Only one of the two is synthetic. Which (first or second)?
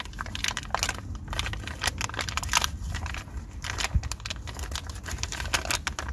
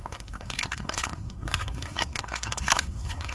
second